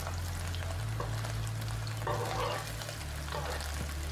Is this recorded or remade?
recorded